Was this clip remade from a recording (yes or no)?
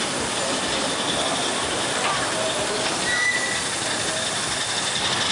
no